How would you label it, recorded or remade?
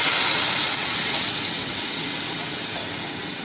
remade